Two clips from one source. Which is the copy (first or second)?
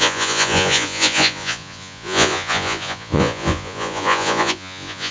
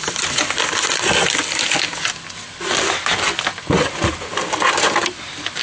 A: first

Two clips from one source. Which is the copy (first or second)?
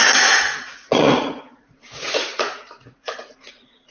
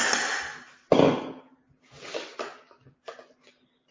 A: first